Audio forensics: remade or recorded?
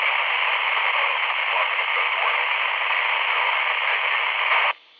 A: recorded